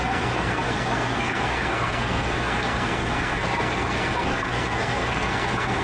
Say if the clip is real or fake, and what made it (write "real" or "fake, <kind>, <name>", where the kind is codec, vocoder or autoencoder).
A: fake, codec, SNAC